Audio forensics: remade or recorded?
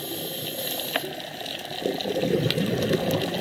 recorded